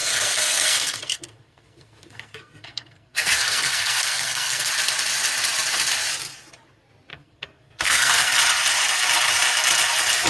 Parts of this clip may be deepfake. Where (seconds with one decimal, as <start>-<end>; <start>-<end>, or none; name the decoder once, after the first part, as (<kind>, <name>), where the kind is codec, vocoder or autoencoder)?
0.0-4.7 (codec, SNAC); 7.1-8.3